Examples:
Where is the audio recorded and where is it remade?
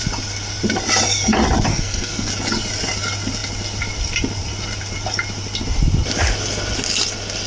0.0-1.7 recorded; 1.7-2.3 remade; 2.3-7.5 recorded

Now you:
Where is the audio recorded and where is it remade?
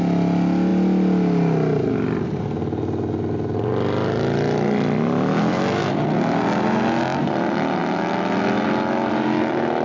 0.0-9.8 recorded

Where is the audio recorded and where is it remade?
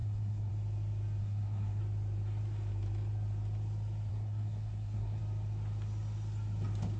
0.0-0.5 remade; 0.5-1.2 recorded; 1.2-1.8 remade; 1.8-4.1 recorded; 4.1-5.2 remade; 5.2-7.0 recorded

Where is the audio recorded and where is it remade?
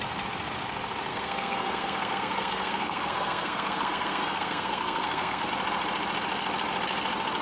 0.0-1.1 recorded; 1.1-5.5 remade; 5.5-7.4 recorded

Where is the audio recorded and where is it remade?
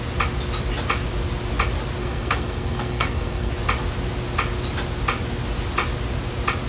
0.0-2.0 recorded; 2.0-3.5 remade; 3.5-6.7 recorded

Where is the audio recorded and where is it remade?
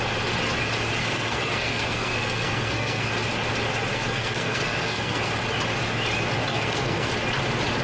0.0-1.0 recorded; 1.0-3.1 remade; 3.1-3.9 recorded; 3.9-5.3 remade; 5.3-6.5 recorded; 6.5-7.1 remade; 7.1-7.8 recorded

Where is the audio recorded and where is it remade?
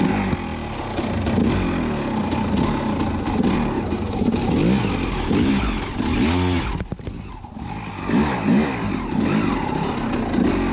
0.0-10.7 recorded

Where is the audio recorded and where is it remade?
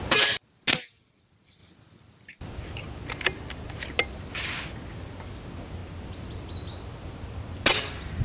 0.0-8.2 recorded